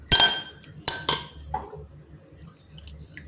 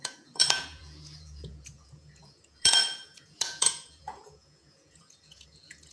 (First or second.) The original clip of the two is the first